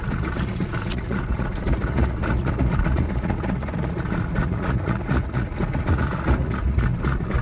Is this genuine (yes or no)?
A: no